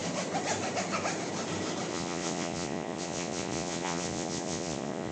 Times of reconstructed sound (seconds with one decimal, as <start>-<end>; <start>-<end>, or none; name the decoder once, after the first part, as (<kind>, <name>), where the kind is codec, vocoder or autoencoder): 1.9-5.1 (vocoder, Vocos)